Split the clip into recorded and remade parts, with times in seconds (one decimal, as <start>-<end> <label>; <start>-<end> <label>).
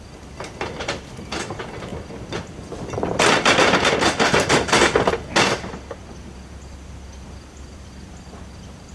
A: 0.0-8.9 recorded